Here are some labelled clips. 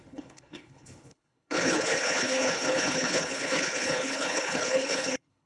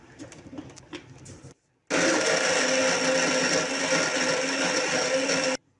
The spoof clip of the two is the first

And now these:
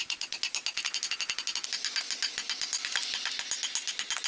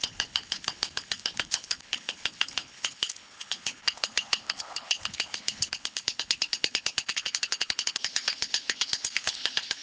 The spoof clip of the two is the second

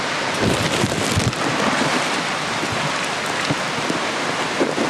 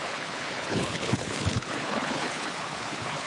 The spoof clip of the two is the second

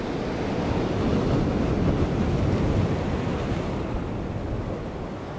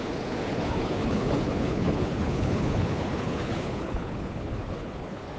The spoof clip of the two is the second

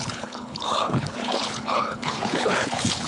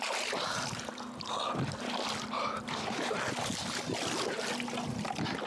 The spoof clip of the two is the first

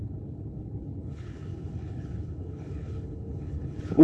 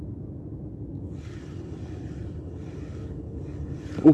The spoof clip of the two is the first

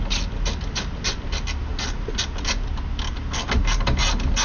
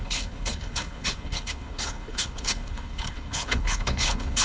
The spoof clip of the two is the second